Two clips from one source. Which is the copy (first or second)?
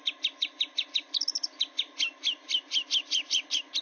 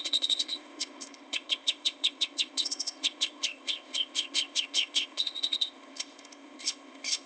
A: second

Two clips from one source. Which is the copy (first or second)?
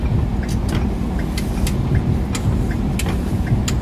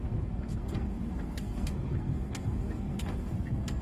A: second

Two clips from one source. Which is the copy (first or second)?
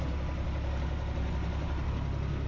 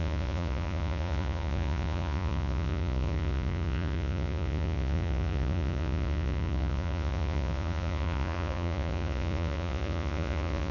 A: second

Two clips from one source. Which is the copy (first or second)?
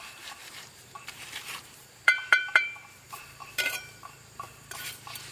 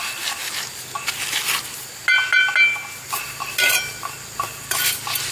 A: first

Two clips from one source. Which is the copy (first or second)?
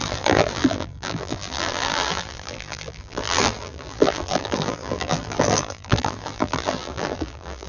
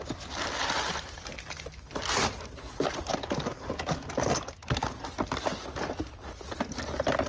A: first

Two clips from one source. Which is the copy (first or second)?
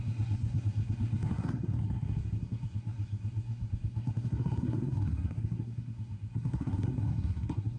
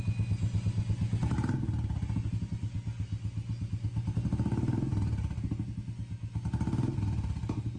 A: first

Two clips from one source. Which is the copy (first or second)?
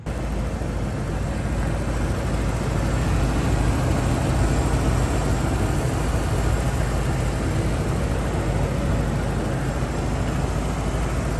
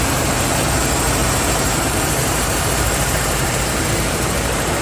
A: second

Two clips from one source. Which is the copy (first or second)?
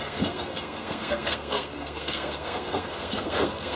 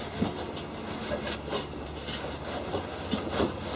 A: first